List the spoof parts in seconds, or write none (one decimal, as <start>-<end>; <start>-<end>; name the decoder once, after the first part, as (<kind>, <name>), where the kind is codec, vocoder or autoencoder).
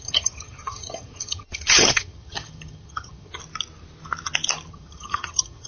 0.0-3.4 (vocoder, HiFi-GAN); 4.7-5.7